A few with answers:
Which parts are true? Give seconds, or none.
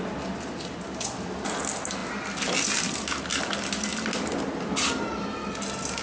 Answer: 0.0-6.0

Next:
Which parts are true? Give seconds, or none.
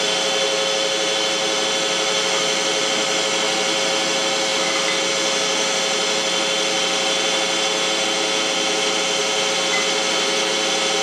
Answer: 0.0-11.0